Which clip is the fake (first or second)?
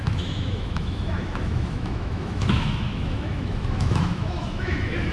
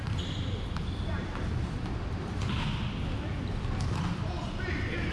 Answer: first